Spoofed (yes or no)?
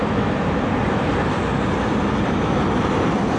no